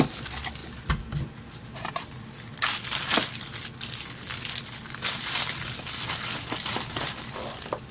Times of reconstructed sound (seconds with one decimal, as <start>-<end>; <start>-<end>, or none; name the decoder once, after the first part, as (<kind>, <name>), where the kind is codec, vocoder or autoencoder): none